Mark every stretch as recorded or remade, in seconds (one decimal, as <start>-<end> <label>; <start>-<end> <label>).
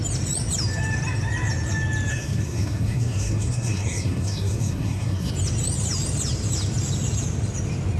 0.0-2.1 recorded; 2.1-5.3 remade; 5.3-8.0 recorded